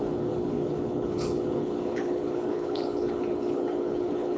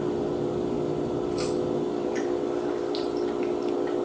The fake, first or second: first